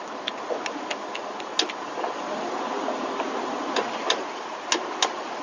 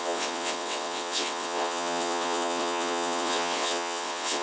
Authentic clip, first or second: first